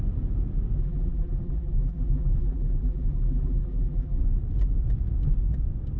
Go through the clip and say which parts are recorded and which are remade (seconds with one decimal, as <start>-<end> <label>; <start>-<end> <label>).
0.0-0.8 recorded; 0.8-4.2 remade; 4.2-6.0 recorded